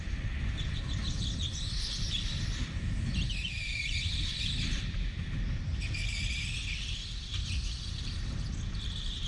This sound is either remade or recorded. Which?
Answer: recorded